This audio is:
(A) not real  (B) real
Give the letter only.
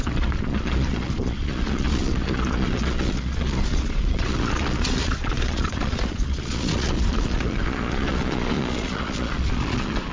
A